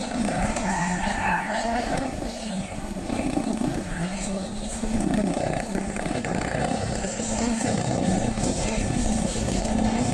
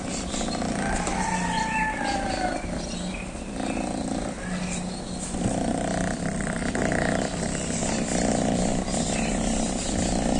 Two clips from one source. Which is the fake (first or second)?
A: first